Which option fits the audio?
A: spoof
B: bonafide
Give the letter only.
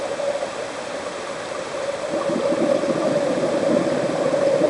B